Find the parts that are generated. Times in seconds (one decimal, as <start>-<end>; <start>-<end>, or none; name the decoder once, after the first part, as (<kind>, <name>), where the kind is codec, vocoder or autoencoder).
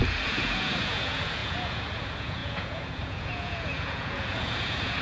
0.0-5.0 (vocoder, Vocos)